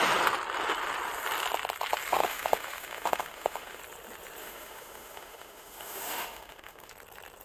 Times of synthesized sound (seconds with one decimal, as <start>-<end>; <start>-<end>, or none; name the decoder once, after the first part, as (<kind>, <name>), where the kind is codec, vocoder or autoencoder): 2.1-3.8 (autoencoder, DAC-VAE); 4.4-6.9